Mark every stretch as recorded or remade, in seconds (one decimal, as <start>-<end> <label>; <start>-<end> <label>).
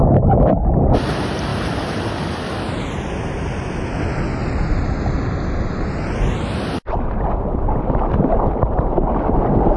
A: 0.0-4.4 recorded; 4.4-5.8 remade; 5.8-9.8 recorded